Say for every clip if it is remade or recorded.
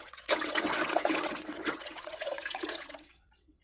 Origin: remade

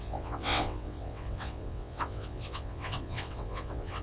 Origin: remade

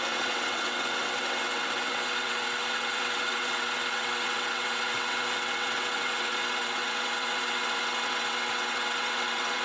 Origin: remade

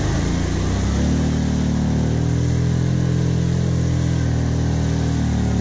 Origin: recorded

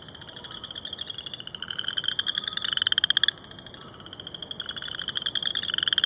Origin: recorded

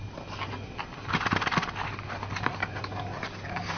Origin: recorded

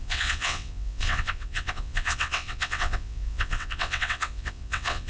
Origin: remade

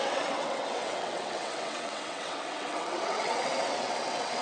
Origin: remade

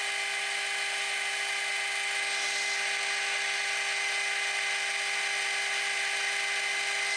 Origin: recorded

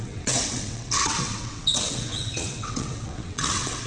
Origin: remade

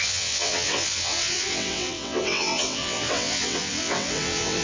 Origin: remade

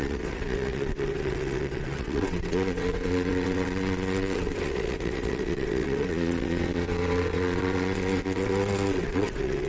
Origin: remade